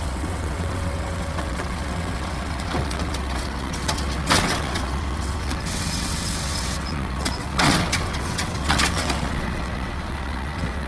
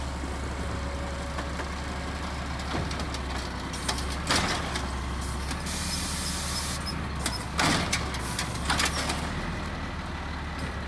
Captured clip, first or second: second